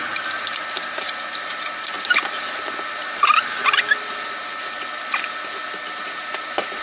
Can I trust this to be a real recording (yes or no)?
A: yes